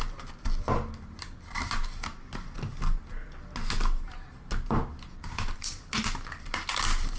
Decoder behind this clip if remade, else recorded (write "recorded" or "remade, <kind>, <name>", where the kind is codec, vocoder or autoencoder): recorded